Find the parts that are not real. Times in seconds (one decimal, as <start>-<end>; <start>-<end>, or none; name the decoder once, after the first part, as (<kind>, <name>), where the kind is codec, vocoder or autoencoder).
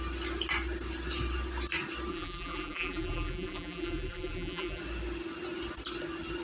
2.1-4.8 (vocoder, BigVGAN v2)